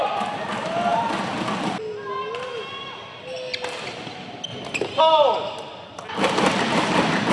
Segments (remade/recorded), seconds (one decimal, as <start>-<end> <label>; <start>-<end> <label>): 0.0-7.3 recorded